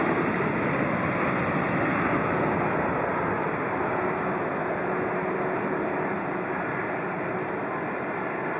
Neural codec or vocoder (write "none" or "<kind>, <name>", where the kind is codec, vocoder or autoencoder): none